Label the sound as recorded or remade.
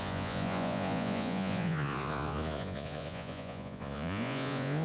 remade